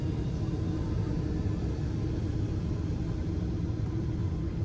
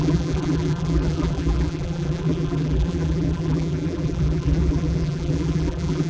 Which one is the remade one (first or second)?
second